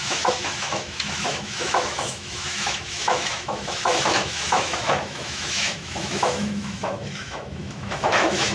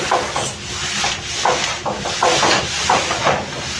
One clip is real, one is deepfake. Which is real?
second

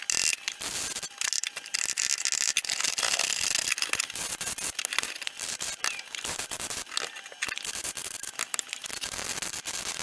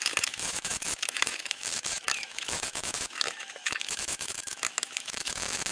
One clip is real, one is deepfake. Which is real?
first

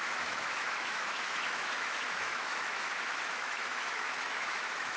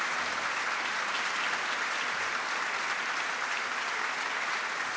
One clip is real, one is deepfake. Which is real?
second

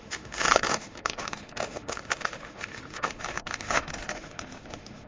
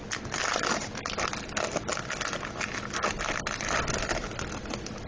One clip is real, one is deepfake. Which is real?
second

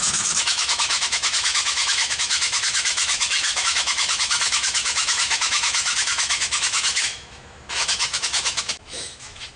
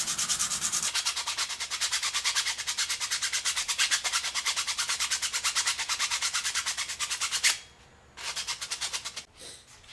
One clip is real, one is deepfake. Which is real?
second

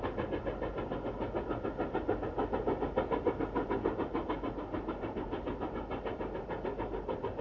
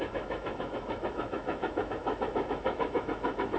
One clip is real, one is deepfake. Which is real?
first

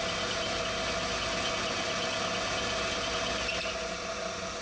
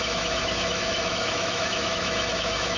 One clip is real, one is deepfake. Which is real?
first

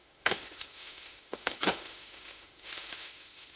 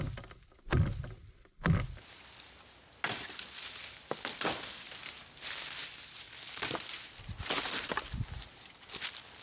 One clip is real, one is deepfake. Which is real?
second